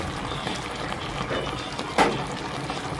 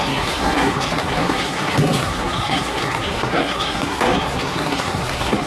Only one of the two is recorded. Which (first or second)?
first